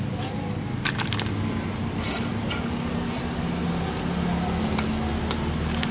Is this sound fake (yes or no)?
no